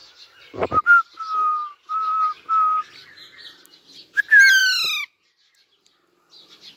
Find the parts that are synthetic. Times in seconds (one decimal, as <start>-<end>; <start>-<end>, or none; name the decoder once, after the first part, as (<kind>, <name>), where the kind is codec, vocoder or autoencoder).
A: 0.0-0.8 (vocoder, BigVGAN v2); 1.6-2.8